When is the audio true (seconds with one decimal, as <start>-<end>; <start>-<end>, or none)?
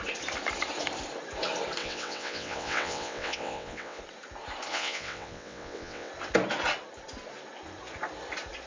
0.0-1.8; 4.0-4.7; 6.1-8.7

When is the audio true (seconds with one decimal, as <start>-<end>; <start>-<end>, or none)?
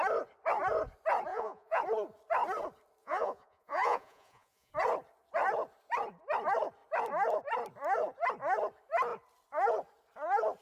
0.0-1.3; 1.8-3.0; 4.7-10.6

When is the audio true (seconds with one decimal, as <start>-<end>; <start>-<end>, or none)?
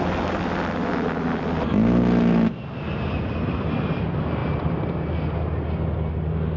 0.0-6.6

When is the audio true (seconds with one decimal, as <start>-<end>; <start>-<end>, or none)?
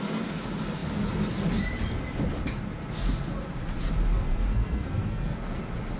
0.0-4.1; 5.6-6.0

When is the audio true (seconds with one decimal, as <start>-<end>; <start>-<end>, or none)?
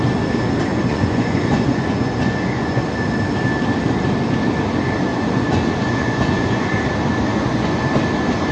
0.0-0.7; 2.8-5.1; 6.7-7.3; 7.8-8.5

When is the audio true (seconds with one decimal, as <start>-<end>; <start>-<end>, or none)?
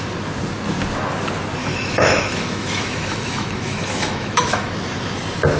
0.0-1.6; 4.7-5.6